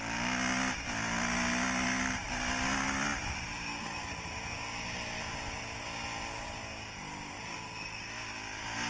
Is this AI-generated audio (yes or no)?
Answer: no